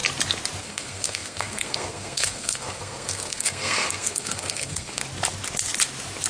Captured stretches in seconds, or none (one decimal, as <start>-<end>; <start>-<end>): 0.0-0.6; 5.0-6.3